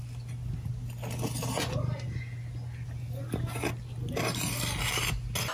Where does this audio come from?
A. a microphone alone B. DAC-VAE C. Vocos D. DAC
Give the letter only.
A